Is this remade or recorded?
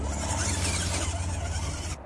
recorded